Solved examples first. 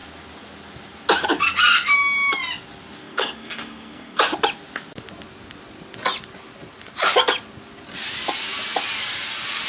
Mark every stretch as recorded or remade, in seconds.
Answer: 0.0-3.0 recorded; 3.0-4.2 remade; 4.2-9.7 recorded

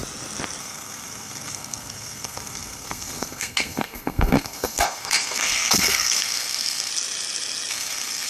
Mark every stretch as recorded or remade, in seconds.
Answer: 0.0-0.6 recorded; 0.6-6.9 remade; 6.9-7.7 recorded; 7.7-8.3 remade

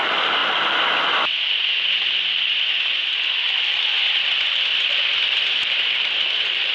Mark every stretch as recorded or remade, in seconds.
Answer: 0.0-0.4 remade; 0.4-3.1 recorded; 3.1-6.7 remade

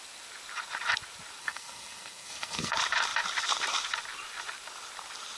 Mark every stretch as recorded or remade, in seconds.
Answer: 0.0-1.4 recorded; 1.4-2.7 remade; 2.7-5.4 recorded

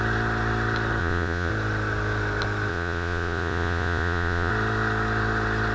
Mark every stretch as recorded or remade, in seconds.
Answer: 0.0-1.0 recorded; 1.0-1.5 remade; 1.5-2.7 recorded; 2.7-4.5 remade; 4.5-5.7 recorded

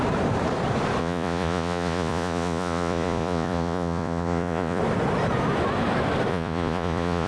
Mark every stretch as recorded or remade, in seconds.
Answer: 0.0-1.0 recorded; 1.0-4.8 remade; 4.8-6.3 recorded; 6.3-7.3 remade